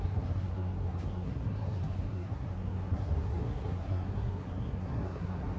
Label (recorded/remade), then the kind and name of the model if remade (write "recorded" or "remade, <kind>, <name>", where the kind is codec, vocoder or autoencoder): remade, codec, SNAC